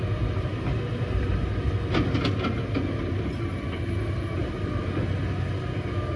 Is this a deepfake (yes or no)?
no